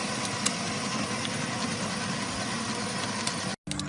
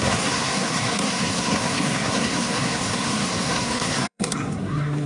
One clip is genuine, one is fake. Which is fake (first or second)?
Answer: second